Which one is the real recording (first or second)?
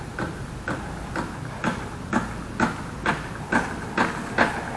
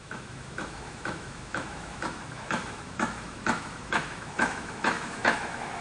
first